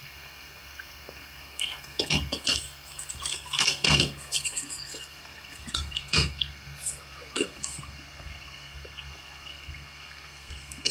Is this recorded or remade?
remade